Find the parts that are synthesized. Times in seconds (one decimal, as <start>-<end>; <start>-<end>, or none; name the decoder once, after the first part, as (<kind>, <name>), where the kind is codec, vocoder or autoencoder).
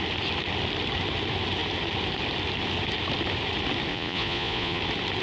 3.9-4.8 (vocoder, Vocos)